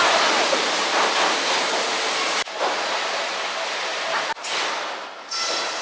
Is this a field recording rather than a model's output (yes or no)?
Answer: yes